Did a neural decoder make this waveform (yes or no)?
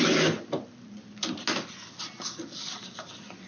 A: no